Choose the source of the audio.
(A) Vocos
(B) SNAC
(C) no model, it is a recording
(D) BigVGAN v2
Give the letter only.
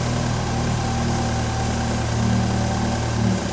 C